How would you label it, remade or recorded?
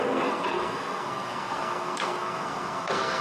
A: remade